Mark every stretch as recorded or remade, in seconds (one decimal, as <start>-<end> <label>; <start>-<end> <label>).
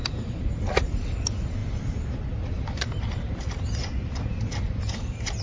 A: 0.0-3.8 recorded; 3.8-4.6 remade; 4.6-5.4 recorded